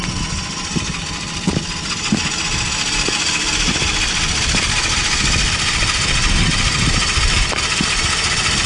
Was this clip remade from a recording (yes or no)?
no